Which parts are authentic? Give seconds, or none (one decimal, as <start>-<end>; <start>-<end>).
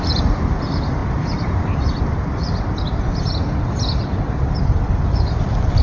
none